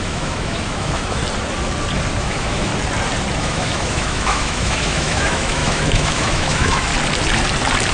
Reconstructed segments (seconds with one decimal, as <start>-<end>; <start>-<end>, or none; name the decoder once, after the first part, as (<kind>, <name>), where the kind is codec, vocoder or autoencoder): 0.0-1.2 (autoencoder, DAC-VAE); 2.2-2.7; 3.4-6.9